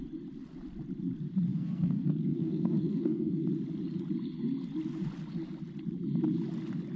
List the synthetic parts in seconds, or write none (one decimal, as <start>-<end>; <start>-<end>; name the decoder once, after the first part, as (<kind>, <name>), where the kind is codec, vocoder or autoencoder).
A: 1.5-3.4 (codec, SNAC)